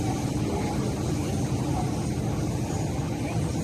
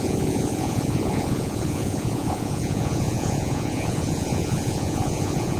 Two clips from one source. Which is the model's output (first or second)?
second